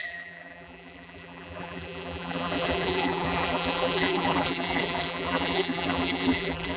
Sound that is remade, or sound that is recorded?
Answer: remade